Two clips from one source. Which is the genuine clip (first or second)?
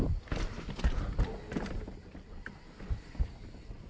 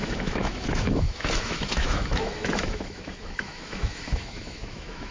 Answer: first